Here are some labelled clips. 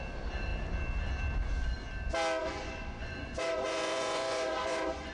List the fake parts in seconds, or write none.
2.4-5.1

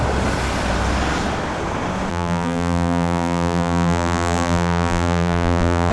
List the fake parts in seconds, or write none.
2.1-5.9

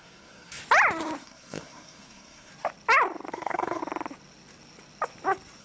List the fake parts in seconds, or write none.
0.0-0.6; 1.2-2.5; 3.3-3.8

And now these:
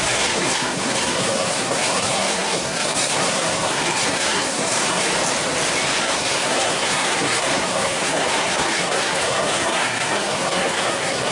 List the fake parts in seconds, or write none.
0.0-5.1; 6.0-11.3

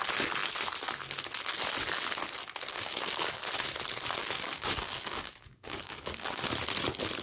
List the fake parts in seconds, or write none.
2.7-3.4; 4.2-6.4

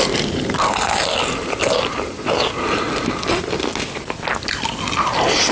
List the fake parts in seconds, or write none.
none

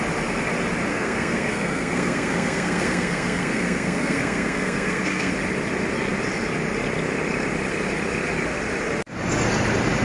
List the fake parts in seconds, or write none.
0.9-5.3

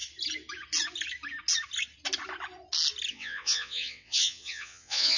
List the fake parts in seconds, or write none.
3.1-5.2